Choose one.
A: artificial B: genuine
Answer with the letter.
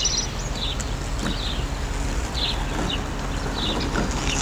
B